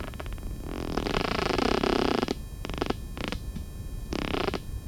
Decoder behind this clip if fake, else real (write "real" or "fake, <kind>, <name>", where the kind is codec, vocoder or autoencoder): real